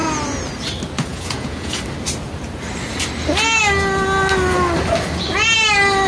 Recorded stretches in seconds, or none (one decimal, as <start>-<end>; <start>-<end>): 0.0-1.1; 1.8-6.1